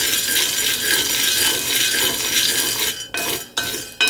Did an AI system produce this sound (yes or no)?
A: no